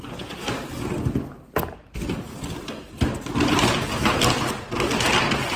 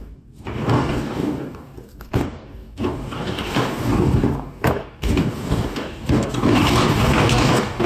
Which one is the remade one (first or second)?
second